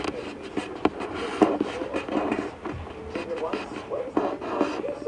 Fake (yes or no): no